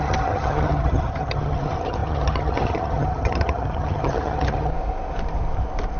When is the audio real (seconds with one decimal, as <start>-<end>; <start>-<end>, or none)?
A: 4.7-6.0